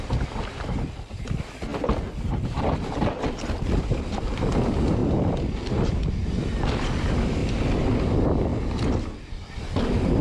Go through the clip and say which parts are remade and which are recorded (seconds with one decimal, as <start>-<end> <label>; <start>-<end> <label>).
0.0-1.7 remade; 1.7-4.6 recorded; 4.6-5.0 remade; 5.0-5.7 recorded; 5.7-7.4 remade; 7.4-8.0 recorded; 8.0-8.5 remade; 8.5-9.3 recorded; 9.3-10.2 remade

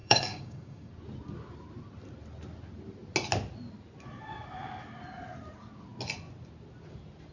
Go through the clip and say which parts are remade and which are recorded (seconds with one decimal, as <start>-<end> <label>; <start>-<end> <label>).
0.0-0.9 remade; 0.9-7.3 recorded

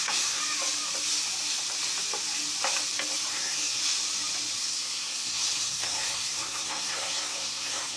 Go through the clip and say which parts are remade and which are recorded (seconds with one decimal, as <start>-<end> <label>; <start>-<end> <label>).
0.0-0.4 remade; 0.4-3.3 recorded; 3.3-3.8 remade; 3.8-4.6 recorded; 4.6-8.0 remade

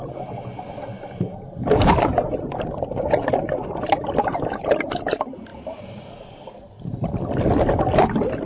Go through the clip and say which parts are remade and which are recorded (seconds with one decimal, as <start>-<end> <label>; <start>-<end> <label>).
0.0-8.5 recorded

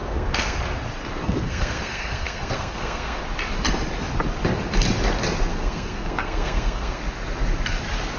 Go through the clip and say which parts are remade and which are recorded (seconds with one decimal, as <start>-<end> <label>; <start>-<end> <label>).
0.0-0.6 remade; 0.6-1.2 recorded; 1.2-3.2 remade; 3.2-5.5 recorded; 5.5-7.0 remade; 7.0-8.2 recorded